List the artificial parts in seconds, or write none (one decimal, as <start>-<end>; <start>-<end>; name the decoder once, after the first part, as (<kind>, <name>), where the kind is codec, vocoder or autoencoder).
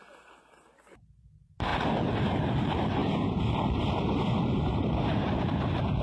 none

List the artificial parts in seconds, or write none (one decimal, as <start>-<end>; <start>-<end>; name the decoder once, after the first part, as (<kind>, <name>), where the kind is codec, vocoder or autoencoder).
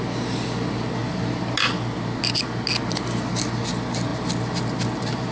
none